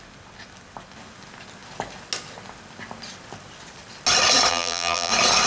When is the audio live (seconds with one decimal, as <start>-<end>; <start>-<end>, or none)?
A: 0.0-4.5; 5.1-5.5